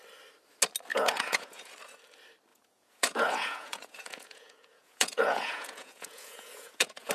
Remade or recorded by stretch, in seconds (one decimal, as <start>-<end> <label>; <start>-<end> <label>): 0.0-0.9 recorded; 0.9-1.7 remade; 1.7-2.5 recorded; 2.5-7.1 remade